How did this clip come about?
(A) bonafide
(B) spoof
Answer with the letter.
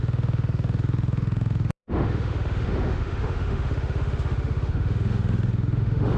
B